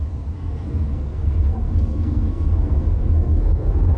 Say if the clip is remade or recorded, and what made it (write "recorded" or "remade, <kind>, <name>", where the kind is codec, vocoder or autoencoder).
remade, codec, SNAC